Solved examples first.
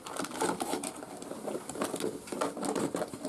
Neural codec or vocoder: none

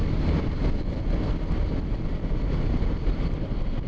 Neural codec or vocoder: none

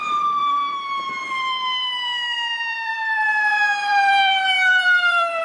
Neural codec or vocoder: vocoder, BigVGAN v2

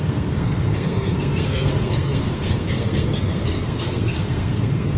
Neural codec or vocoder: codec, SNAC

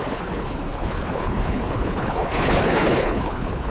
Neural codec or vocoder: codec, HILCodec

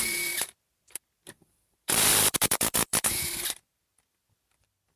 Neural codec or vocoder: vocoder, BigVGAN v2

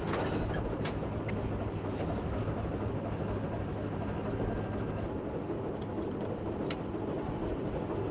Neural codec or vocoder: none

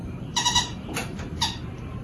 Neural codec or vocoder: vocoder, BigVGAN v2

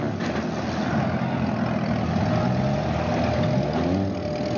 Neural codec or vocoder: none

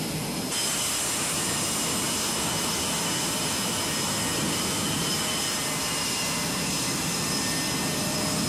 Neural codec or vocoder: none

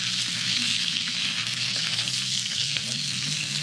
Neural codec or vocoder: codec, SNAC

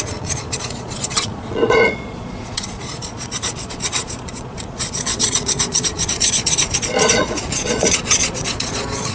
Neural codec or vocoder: vocoder, Vocos